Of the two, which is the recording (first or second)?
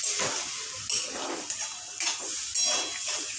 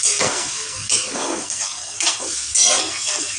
first